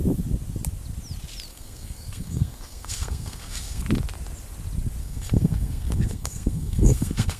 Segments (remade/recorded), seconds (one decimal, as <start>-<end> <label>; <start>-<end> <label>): 0.0-1.5 recorded; 1.5-3.8 remade; 3.8-5.0 recorded; 5.0-7.4 remade

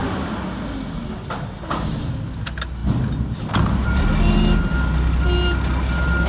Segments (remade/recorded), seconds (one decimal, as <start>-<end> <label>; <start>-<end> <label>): 0.0-6.3 recorded